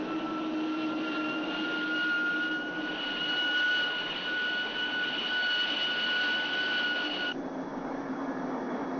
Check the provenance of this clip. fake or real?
real